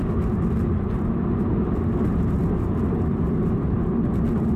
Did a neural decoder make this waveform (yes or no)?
no